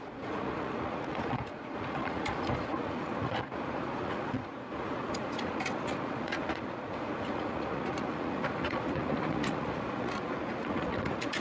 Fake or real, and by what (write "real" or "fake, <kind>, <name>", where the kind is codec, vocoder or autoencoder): fake, vocoder, Vocos